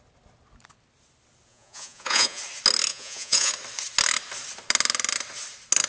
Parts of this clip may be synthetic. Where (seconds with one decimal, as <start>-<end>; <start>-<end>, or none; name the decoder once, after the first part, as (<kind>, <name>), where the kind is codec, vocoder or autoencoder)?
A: 1.5-2.4 (vocoder, Vocos); 2.9-3.5